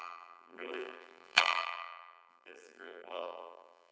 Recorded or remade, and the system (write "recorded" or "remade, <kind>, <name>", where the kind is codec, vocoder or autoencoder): remade, vocoder, BigVGAN v2